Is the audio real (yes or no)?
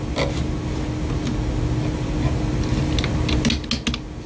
yes